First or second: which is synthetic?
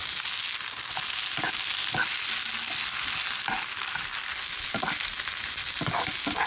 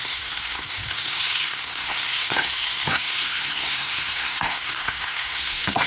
second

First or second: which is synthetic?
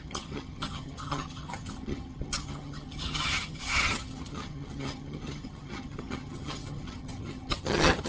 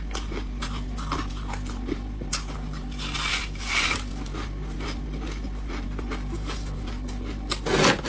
first